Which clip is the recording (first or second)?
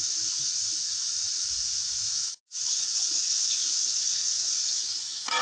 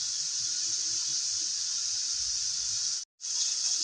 second